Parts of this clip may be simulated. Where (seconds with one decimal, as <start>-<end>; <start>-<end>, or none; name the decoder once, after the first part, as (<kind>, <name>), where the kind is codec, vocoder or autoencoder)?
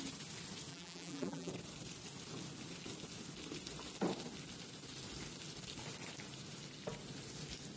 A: 0.7-1.5 (vocoder, BigVGAN v2)